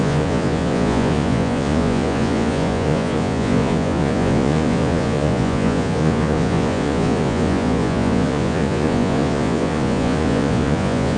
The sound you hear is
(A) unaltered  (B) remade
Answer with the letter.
B